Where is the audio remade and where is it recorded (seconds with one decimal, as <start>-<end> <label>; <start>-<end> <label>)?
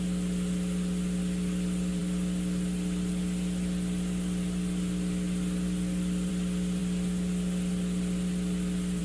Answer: 0.0-9.0 recorded